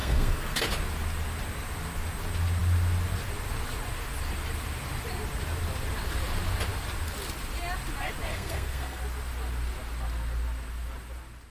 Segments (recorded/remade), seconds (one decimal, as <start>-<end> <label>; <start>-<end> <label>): 0.0-0.6 remade; 0.6-8.3 recorded; 8.3-9.0 remade; 9.0-11.5 recorded